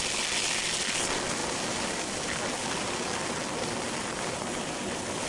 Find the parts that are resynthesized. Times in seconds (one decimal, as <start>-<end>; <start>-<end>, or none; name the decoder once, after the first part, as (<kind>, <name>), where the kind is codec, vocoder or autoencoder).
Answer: none